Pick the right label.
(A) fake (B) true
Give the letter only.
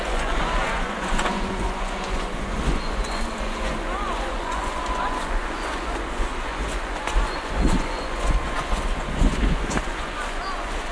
A